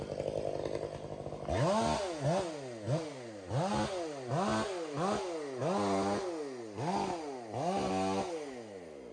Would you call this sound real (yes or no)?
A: yes